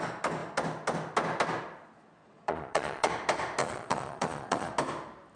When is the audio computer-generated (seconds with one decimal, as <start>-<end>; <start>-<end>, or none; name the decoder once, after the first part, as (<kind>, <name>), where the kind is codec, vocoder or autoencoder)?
2.2-3.1 (vocoder, Vocos); 3.6-4.7